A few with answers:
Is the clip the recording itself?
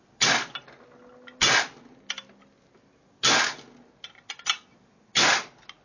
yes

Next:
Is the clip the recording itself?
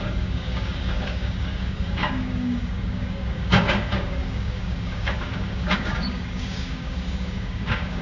no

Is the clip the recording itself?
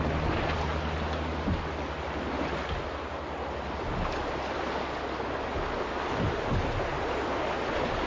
yes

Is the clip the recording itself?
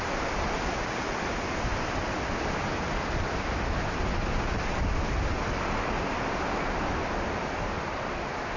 yes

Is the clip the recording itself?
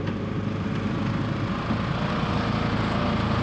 yes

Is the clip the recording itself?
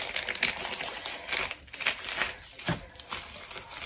yes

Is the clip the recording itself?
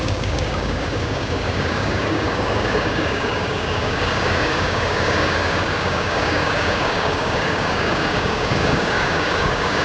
no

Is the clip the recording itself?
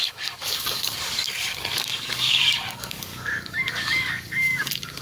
no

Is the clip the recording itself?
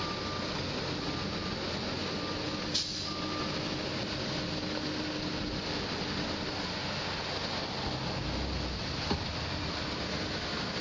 yes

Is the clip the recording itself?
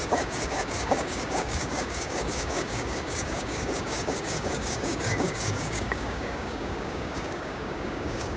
no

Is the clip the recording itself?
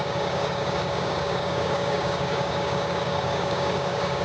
no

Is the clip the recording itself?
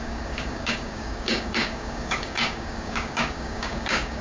no